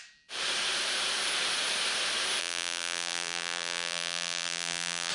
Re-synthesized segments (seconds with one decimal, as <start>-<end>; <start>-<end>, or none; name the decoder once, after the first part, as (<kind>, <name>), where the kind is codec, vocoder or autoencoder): 2.4-5.1 (vocoder, BigVGAN v2)